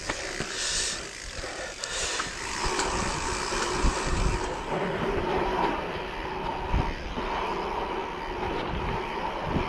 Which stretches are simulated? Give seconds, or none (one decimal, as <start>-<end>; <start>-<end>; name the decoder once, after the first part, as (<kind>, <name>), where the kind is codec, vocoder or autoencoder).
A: 0.0-9.7 (vocoder, BigVGAN v2)